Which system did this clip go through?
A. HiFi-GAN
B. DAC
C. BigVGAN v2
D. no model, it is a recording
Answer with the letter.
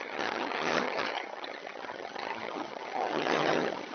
A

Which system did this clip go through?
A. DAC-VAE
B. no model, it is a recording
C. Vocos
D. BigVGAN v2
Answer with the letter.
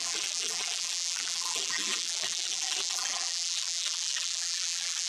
D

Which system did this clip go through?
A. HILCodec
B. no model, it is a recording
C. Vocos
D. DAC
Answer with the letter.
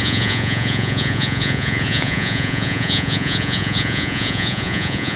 C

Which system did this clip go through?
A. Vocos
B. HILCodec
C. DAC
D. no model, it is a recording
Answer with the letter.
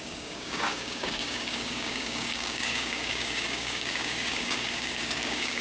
C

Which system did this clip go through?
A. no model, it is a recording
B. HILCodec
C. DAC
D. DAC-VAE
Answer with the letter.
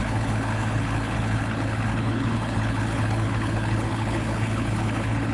B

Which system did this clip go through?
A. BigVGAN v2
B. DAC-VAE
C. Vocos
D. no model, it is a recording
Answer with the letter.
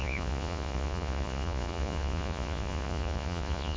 C